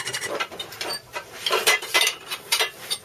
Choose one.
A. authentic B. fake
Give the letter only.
B